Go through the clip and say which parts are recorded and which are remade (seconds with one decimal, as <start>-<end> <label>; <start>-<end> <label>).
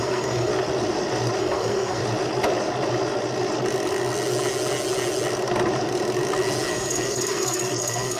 0.0-0.5 remade; 0.5-1.4 recorded; 1.4-2.0 remade; 2.0-6.7 recorded; 6.7-8.2 remade